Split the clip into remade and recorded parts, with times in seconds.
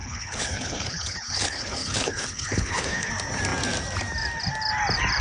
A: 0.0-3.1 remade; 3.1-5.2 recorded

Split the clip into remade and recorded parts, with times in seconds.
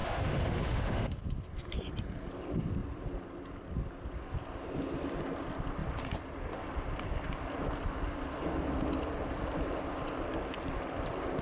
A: 0.0-1.2 remade; 1.2-11.4 recorded